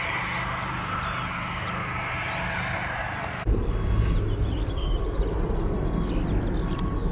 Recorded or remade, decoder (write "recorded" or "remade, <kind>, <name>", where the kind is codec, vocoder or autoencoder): recorded